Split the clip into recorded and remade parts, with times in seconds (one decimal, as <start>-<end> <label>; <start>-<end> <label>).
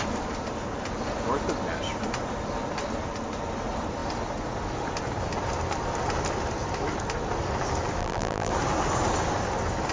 0.0-8.0 recorded; 8.0-8.5 remade; 8.5-9.9 recorded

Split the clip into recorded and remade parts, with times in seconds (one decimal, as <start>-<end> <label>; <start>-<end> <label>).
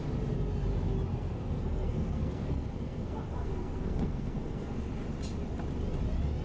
0.0-1.1 recorded; 1.1-4.9 remade; 4.9-6.4 recorded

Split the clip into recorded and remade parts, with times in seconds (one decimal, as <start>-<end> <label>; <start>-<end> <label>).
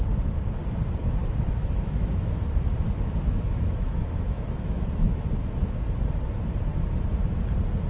0.0-1.2 recorded; 1.2-5.3 remade; 5.3-7.9 recorded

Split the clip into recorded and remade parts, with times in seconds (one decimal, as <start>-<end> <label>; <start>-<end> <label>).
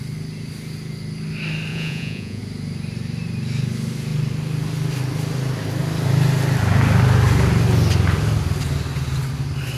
0.0-1.7 recorded; 1.7-2.4 remade; 2.4-9.8 recorded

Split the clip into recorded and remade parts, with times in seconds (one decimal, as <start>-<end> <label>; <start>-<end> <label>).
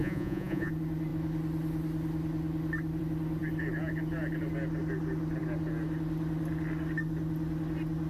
0.0-0.7 remade; 0.7-8.1 recorded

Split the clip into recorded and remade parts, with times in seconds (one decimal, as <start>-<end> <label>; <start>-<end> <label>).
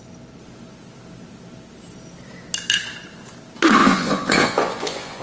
0.0-3.8 recorded; 3.8-5.2 remade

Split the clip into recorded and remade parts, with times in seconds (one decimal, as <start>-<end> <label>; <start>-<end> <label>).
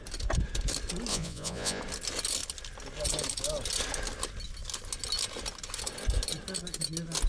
0.0-1.1 recorded; 1.1-1.8 remade; 1.8-7.3 recorded